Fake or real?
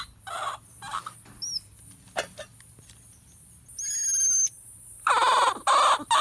real